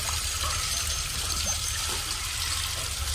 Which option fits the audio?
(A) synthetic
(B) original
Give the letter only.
B